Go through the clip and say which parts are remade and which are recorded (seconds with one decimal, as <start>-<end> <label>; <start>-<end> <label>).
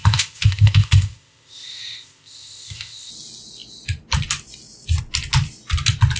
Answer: 0.0-3.1 remade; 3.1-6.2 recorded